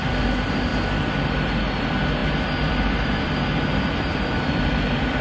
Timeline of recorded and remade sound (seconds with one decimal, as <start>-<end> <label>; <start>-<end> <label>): 0.0-0.7 remade; 0.7-1.5 recorded; 1.5-5.2 remade